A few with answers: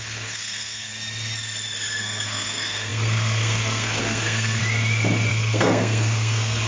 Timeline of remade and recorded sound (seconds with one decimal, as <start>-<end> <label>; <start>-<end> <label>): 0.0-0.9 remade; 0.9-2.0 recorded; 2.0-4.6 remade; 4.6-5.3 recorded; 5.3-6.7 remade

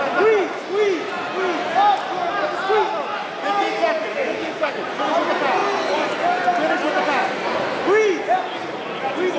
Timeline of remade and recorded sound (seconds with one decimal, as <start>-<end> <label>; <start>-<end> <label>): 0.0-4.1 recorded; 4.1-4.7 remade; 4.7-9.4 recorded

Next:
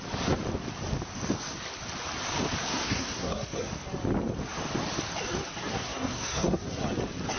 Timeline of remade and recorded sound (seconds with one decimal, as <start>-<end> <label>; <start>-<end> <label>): 0.0-2.6 recorded; 2.6-3.7 remade; 3.7-5.7 recorded; 5.7-6.8 remade; 6.8-7.4 recorded

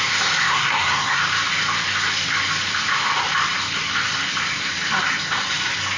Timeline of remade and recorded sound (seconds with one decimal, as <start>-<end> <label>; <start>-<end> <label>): 0.0-0.4 recorded; 0.4-1.2 remade; 1.2-6.0 recorded

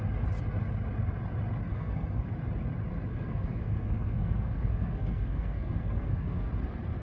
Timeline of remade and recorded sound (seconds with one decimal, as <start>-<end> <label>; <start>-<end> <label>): 0.0-1.7 recorded; 1.7-2.3 remade; 2.3-3.1 recorded; 3.1-6.5 remade; 6.5-7.0 recorded

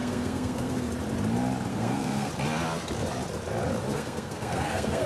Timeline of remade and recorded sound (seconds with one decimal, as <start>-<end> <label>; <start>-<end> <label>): 0.0-0.9 remade; 0.9-1.7 recorded; 1.7-2.3 remade; 2.3-3.9 recorded; 3.9-5.1 remade